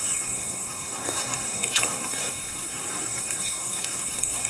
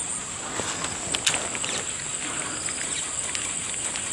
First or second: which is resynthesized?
first